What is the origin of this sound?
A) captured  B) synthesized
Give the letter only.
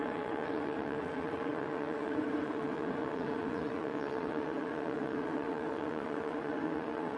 B